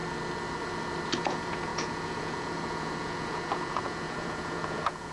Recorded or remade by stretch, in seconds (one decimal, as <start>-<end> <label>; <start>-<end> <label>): 0.0-1.2 recorded; 1.2-5.1 remade

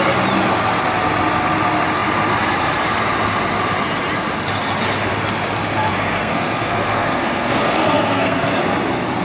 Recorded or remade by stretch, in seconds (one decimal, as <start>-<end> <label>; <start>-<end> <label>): 0.0-5.9 recorded; 5.9-8.6 remade; 8.6-9.2 recorded

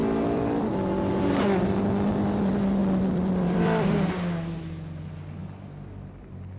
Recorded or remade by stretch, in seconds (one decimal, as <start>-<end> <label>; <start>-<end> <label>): 0.0-0.7 remade; 0.7-2.8 recorded; 2.8-4.1 remade; 4.1-6.6 recorded

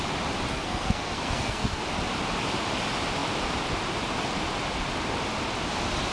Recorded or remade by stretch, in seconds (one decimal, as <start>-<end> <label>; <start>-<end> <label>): 0.0-0.5 recorded; 0.5-1.8 remade; 1.8-6.1 recorded

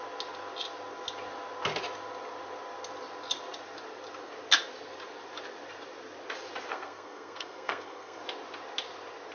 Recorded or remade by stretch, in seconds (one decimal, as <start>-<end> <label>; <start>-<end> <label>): 0.0-6.7 recorded; 6.7-8.2 remade; 8.2-9.3 recorded

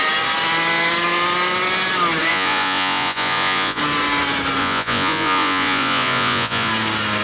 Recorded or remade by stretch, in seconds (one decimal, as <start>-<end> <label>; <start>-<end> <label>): 0.0-2.3 recorded; 2.3-3.8 remade; 3.8-4.6 recorded; 4.6-6.7 remade; 6.7-7.2 recorded

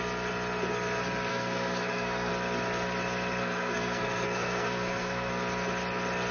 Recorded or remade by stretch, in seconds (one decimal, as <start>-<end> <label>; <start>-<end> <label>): 0.0-1.3 recorded; 1.3-2.3 remade; 2.3-3.4 recorded; 3.4-5.3 remade; 5.3-6.3 recorded